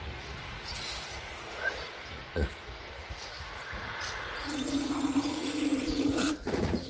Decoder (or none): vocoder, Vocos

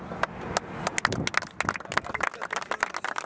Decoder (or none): none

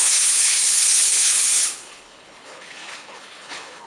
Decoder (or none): codec, HILCodec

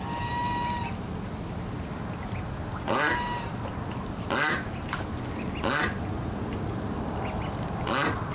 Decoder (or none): none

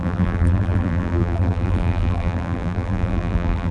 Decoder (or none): vocoder, BigVGAN v2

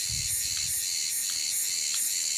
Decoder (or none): none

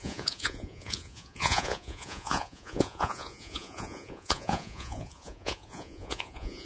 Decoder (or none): vocoder, Vocos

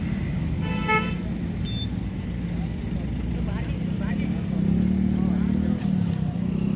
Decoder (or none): none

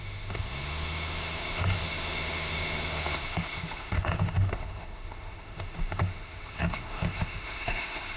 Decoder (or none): autoencoder, DAC-VAE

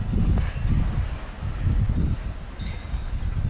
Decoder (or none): none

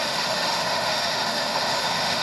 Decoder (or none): autoencoder, DAC-VAE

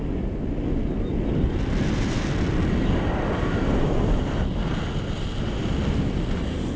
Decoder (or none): none